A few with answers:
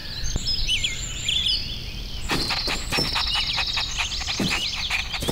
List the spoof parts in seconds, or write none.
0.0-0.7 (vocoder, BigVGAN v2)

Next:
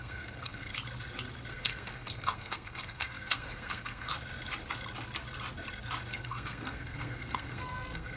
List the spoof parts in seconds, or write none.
0.0-0.7 (codec, SNAC); 1.5-4.1; 6.1-8.2